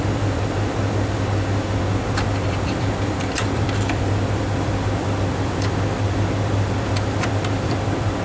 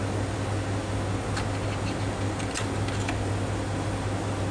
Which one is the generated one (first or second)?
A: first